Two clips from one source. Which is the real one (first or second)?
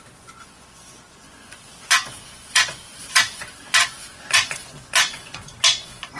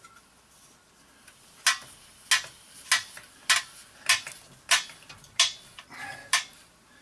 second